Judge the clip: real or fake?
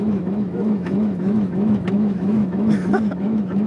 fake